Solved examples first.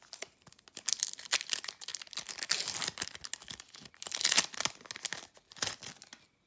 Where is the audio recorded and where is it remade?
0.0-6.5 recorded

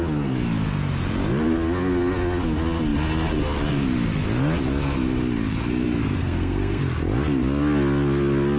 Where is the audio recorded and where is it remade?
0.0-6.2 recorded; 6.2-6.8 remade; 6.8-8.6 recorded

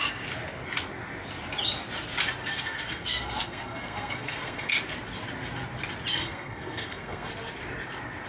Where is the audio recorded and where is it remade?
0.0-2.5 recorded; 2.5-4.7 remade; 4.7-6.1 recorded; 6.1-7.3 remade; 7.3-8.3 recorded

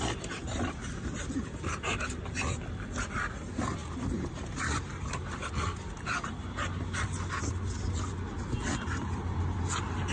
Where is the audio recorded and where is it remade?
0.0-3.8 recorded; 3.8-5.5 remade; 5.5-10.1 recorded

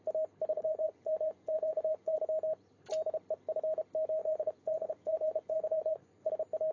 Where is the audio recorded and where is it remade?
0.0-0.5 recorded; 0.5-2.2 remade; 2.2-4.2 recorded; 4.2-6.3 remade; 6.3-6.7 recorded

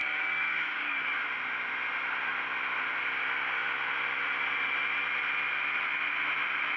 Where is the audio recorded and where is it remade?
0.0-1.0 remade; 1.0-6.8 recorded